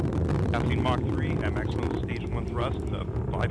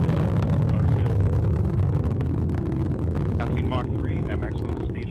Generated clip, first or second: second